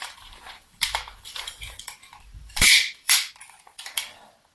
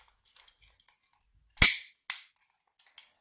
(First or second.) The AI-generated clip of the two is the first